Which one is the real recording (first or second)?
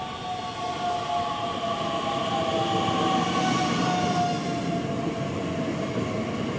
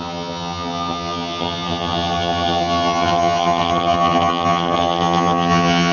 first